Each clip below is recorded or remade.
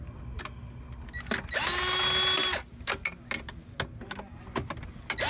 recorded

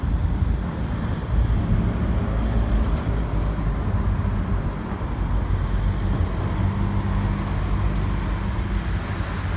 recorded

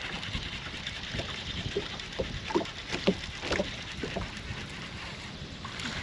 recorded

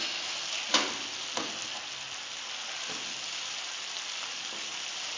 recorded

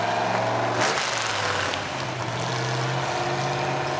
recorded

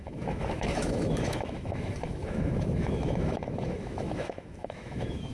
remade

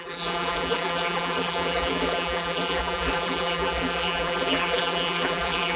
remade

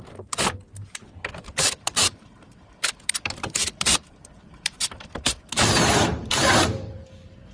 remade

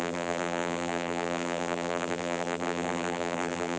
remade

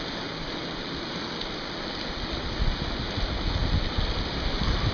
recorded